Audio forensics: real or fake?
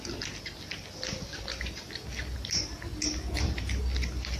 real